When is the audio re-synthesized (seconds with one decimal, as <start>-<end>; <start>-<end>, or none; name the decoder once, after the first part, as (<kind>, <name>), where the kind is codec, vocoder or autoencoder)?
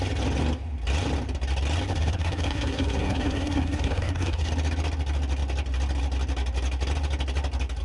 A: 1.9-4.5 (codec, SNAC)